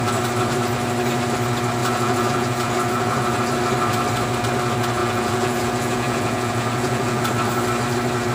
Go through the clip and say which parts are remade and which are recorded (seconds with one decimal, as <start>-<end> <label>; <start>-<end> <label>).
0.0-1.8 recorded; 1.8-3.4 remade; 3.4-5.0 recorded; 5.0-7.2 remade; 7.2-8.3 recorded